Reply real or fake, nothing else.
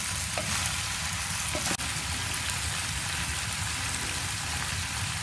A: real